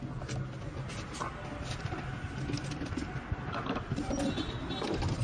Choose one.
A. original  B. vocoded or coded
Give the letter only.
A